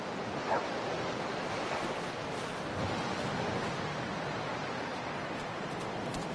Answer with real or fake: real